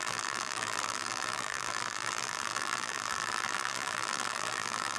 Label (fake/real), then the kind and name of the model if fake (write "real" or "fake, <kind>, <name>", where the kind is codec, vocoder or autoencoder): fake, vocoder, BigVGAN v2